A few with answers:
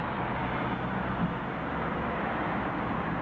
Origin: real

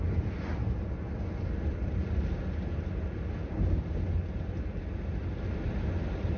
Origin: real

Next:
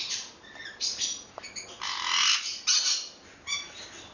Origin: real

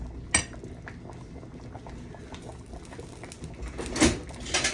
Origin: real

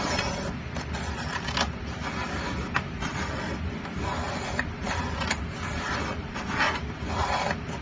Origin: real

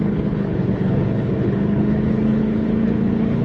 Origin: fake